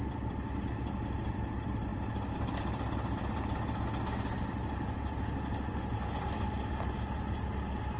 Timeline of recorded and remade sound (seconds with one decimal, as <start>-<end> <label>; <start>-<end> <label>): 0.0-8.0 recorded